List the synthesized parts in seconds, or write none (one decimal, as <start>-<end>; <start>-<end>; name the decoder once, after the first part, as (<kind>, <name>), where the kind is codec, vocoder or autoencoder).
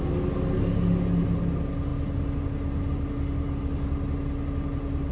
none